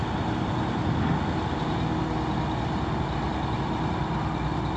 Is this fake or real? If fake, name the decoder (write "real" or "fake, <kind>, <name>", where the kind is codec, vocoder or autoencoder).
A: real